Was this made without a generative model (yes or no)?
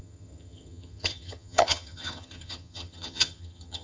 no